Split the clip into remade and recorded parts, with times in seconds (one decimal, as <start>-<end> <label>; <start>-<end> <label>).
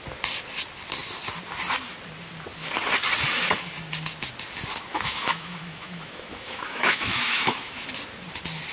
0.0-4.9 recorded; 4.9-7.9 remade; 7.9-8.7 recorded